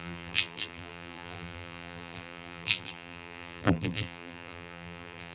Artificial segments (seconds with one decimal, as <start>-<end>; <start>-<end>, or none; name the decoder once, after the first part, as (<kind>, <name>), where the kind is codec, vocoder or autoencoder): 0.0-5.3 (vocoder, BigVGAN v2)